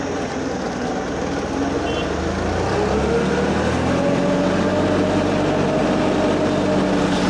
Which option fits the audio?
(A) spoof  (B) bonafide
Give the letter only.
B